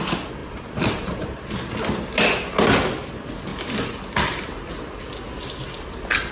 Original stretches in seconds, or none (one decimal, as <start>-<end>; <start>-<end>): 0.0-0.4; 1.4-6.3